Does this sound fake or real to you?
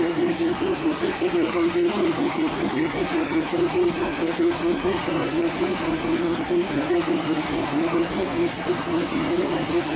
fake